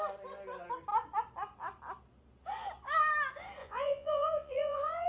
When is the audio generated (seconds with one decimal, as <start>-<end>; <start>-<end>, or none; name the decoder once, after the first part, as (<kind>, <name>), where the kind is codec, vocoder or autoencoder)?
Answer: 3.6-5.1 (vocoder, Vocos)